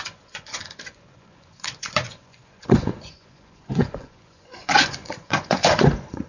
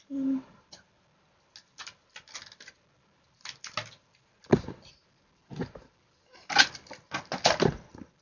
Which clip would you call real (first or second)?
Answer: second